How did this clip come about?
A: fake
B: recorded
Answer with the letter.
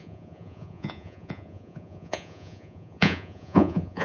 A